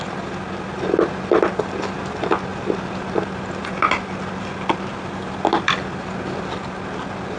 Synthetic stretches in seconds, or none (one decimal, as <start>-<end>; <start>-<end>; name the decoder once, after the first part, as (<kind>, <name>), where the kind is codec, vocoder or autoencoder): none